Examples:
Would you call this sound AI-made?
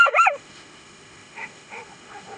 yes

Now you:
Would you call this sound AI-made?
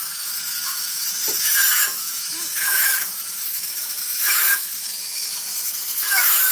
yes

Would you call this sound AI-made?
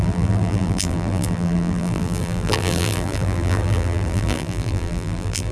yes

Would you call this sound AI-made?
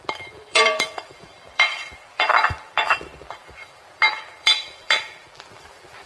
yes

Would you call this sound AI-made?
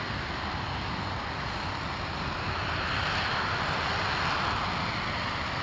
no